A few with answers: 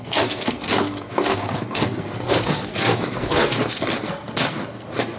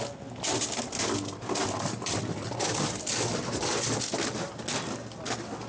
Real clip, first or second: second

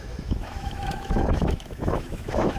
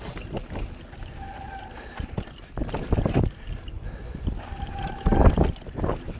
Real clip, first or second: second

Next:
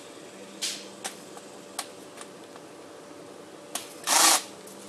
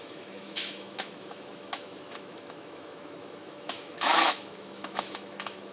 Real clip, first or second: first